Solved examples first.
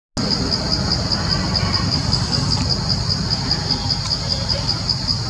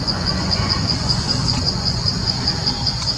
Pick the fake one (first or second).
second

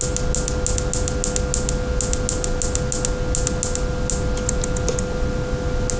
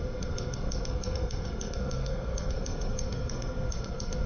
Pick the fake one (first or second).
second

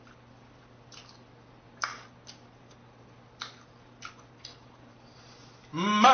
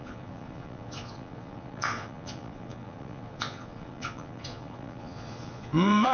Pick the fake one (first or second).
second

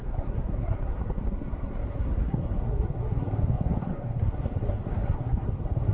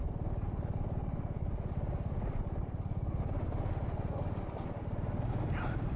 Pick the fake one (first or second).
first